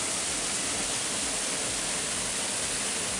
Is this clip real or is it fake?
real